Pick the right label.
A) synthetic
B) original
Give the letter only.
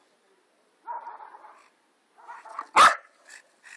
B